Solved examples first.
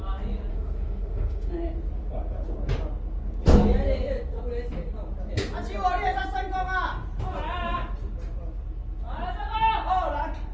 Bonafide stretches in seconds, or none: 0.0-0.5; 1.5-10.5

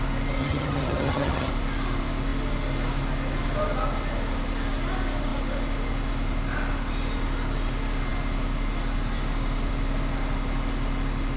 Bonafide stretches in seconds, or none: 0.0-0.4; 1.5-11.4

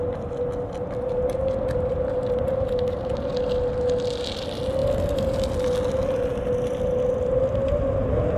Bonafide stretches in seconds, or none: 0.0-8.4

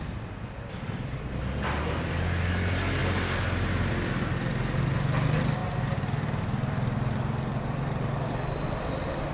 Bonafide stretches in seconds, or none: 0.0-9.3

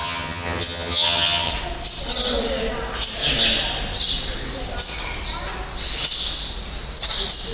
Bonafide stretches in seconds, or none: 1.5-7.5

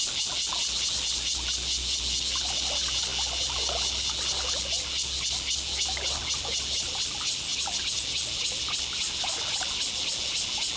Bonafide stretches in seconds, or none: 0.0-10.8

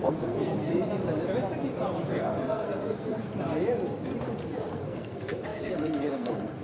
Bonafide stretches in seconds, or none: 0.7-2.0; 3.3-4.7